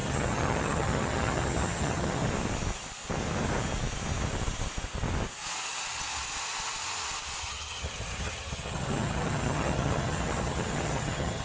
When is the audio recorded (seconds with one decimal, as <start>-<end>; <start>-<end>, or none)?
2.2-7.4